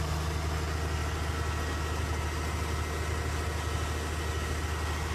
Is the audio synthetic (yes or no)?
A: no